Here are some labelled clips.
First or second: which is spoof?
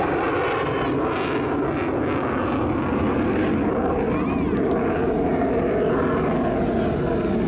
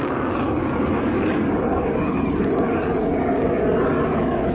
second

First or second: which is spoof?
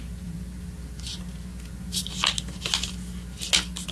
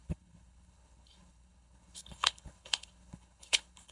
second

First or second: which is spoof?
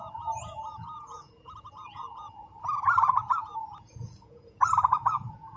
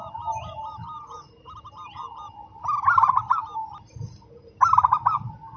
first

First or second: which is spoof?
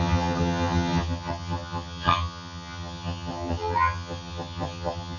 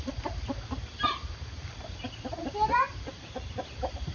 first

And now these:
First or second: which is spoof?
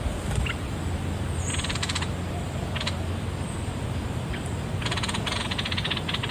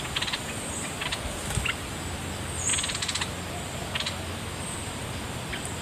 first